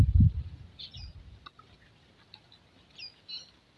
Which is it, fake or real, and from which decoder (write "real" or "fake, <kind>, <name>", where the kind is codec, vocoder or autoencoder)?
real